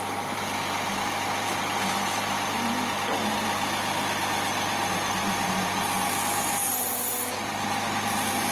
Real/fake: real